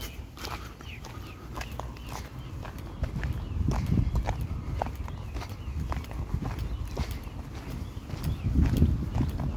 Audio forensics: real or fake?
real